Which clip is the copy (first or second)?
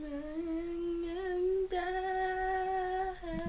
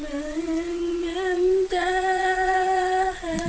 second